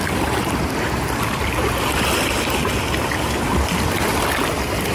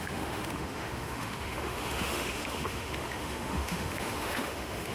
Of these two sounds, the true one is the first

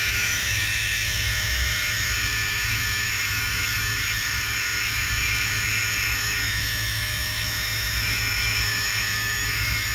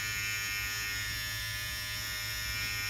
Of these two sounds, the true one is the second